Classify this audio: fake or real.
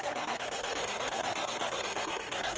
fake